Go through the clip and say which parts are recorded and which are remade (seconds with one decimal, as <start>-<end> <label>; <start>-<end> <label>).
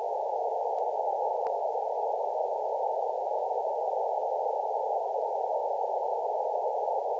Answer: 0.0-7.2 recorded